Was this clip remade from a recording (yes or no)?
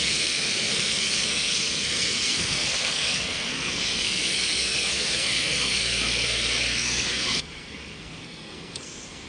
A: yes